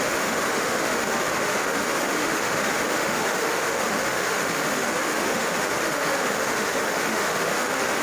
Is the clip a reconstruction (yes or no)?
yes